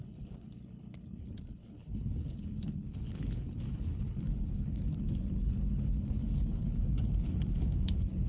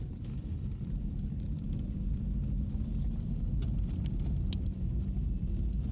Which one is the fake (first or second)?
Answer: first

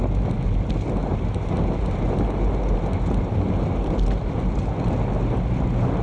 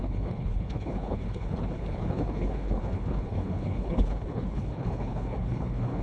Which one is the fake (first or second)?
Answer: second